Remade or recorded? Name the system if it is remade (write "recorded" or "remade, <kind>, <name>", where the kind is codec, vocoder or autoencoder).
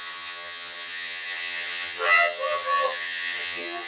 remade, vocoder, HiFi-GAN